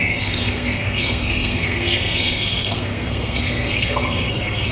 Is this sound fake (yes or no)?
yes